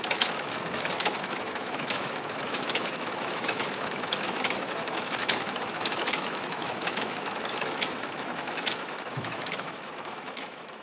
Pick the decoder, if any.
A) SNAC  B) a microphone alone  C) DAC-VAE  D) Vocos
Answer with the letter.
C